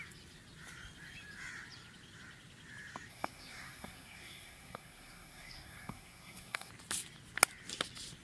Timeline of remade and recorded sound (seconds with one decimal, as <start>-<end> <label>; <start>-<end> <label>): 0.0-3.1 recorded; 3.1-6.7 remade; 6.7-8.2 recorded